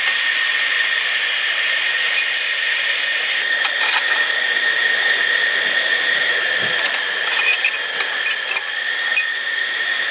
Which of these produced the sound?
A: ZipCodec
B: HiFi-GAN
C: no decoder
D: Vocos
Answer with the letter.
C